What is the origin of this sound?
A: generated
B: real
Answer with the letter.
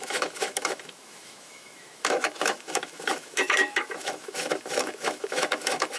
A